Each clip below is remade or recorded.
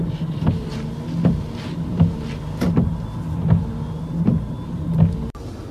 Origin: recorded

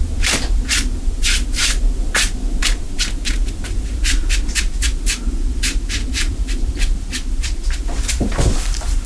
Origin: remade